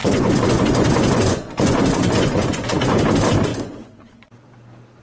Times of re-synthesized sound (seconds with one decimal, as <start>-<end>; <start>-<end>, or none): 0.0-3.0; 3.5-4.3